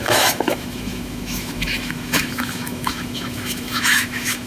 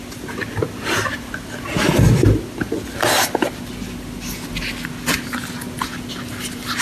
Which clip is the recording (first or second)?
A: second